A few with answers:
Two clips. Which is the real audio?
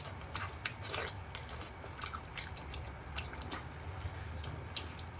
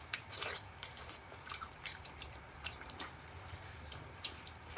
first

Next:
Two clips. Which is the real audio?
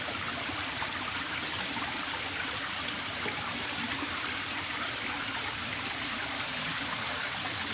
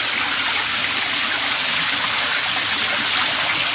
second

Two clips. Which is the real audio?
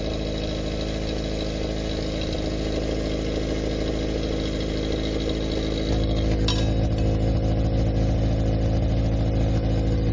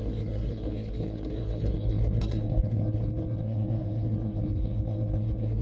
first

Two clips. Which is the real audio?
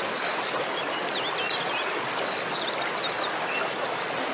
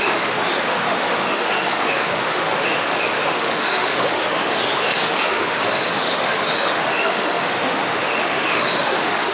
first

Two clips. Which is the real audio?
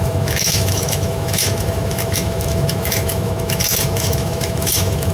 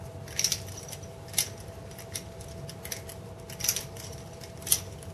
second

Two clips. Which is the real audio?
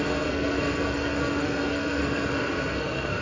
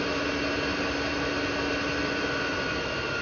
second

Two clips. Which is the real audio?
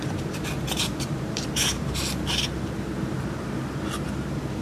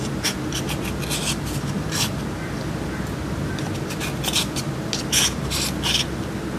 second